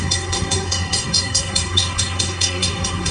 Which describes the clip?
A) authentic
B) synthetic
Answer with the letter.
B